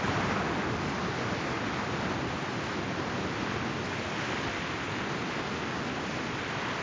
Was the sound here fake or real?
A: real